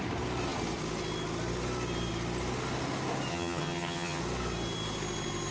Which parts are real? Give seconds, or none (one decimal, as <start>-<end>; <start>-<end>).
0.0-3.3; 4.2-5.5